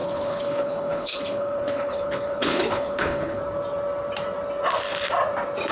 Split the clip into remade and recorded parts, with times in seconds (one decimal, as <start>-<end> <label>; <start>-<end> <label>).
0.0-3.4 remade; 3.4-5.7 recorded